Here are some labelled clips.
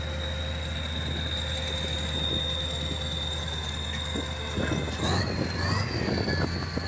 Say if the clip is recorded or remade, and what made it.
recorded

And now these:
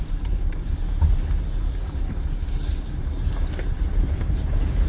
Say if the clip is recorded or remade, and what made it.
remade, vocoder, BigVGAN v2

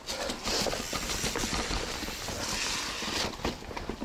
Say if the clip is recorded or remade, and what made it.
recorded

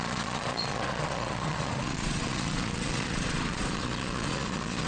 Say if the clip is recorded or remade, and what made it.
remade, vocoder, Vocos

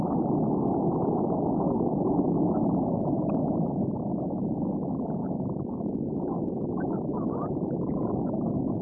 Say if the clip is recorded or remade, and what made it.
recorded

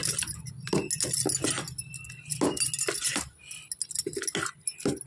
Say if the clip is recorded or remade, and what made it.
recorded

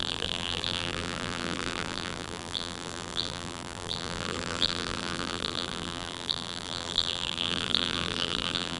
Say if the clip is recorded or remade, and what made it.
remade, vocoder, BigVGAN v2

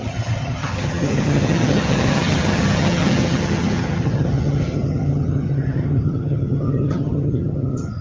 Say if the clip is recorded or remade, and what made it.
remade, vocoder, HiFi-GAN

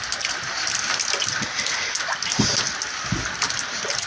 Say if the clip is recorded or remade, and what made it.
recorded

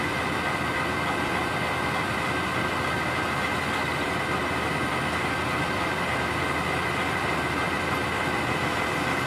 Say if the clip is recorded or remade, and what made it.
remade, vocoder, BigVGAN v2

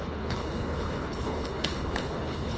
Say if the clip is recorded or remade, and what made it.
remade, codec, HILCodec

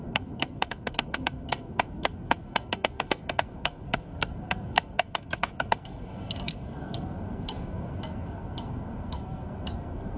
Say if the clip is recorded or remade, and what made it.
remade, codec, SNAC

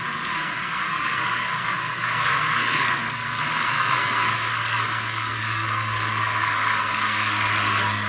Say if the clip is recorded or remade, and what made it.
remade, codec, SNAC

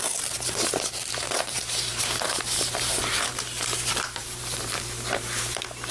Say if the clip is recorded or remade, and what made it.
remade, vocoder, BigVGAN v2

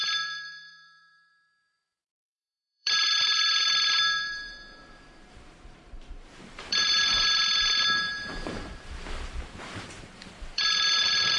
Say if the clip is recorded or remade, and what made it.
remade, vocoder, BigVGAN v2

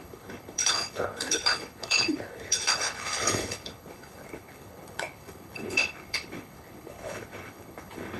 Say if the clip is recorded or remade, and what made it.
remade, codec, HILCodec